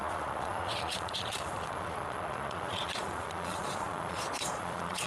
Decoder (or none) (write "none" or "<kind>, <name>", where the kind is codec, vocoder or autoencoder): vocoder, Vocos